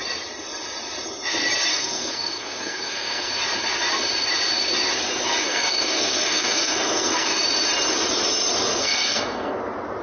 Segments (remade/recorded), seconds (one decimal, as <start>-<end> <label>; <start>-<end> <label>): 0.0-1.7 recorded; 1.7-3.3 remade; 3.3-5.4 recorded; 5.4-7.4 remade; 7.4-8.7 recorded; 8.7-9.6 remade; 9.6-10.0 recorded